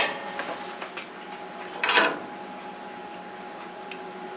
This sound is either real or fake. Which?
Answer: real